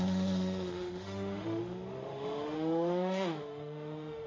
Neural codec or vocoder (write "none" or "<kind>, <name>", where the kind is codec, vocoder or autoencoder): autoencoder, DAC-VAE